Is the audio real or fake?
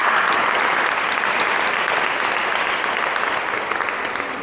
real